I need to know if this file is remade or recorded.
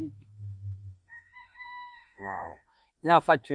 remade